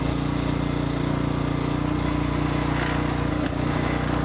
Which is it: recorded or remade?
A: recorded